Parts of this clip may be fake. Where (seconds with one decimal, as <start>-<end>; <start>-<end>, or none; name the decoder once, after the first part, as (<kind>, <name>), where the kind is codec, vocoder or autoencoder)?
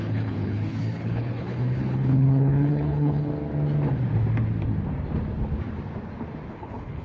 0.0-3.3 (codec, HILCodec); 6.5-7.0